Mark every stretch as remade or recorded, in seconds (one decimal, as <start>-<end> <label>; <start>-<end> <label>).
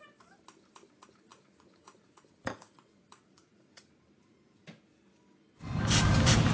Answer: 0.0-1.3 recorded; 1.3-3.9 remade; 3.9-6.5 recorded